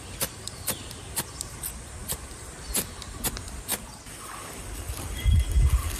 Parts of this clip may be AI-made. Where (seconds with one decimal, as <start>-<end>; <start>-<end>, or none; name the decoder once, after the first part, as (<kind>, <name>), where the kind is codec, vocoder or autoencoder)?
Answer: none